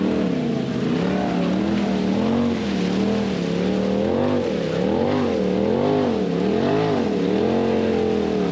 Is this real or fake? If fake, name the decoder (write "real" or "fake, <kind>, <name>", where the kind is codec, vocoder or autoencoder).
real